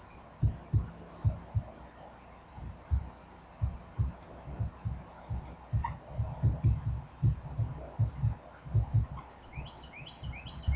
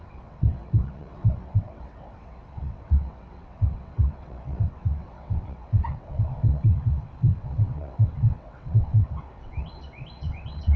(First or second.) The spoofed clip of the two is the second